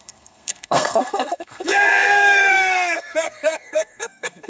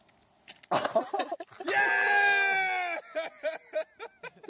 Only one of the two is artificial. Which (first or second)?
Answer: first